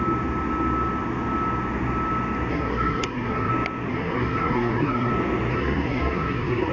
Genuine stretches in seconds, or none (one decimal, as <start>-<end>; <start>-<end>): 0.0-2.5; 3.5-3.9; 5.1-5.5